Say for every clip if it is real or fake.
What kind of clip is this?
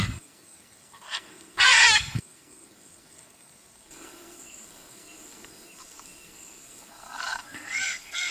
fake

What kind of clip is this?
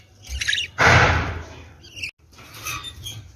real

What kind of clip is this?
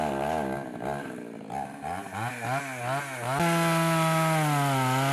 real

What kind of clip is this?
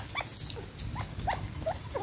real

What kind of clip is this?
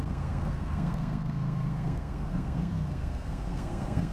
fake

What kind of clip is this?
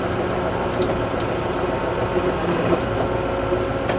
real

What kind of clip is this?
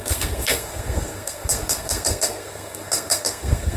fake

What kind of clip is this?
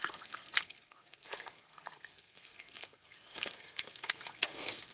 fake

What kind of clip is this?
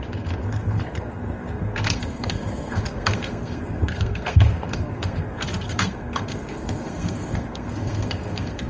fake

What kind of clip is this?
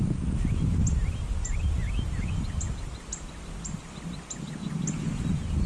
real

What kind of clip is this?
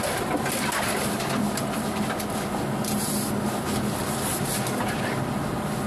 real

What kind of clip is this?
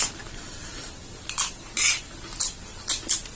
real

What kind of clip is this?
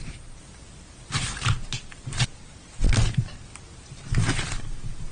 real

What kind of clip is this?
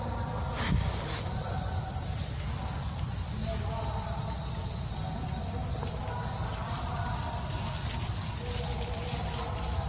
real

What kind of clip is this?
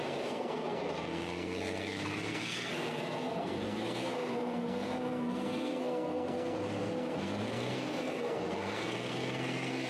fake